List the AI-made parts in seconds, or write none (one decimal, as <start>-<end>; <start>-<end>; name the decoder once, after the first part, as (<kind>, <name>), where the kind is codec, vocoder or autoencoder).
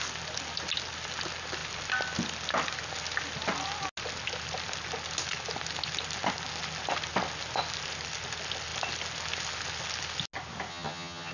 10.7-11.3 (vocoder, HiFi-GAN)